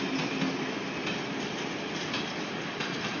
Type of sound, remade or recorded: recorded